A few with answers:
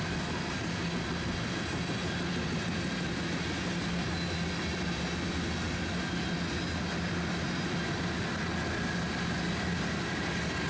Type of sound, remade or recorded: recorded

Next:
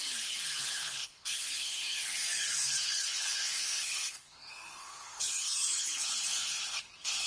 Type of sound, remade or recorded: remade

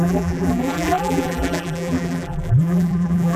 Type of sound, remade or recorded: remade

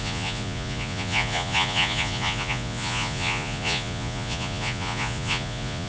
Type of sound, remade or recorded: remade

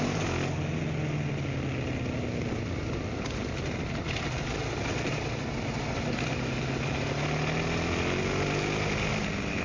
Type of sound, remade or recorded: recorded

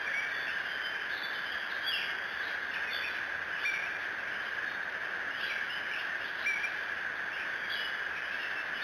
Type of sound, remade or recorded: recorded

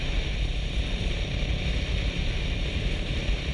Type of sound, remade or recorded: recorded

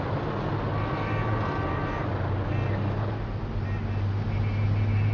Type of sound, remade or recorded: recorded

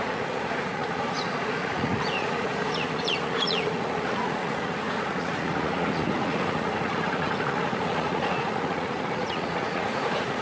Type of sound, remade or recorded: remade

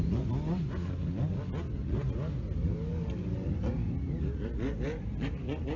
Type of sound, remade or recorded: recorded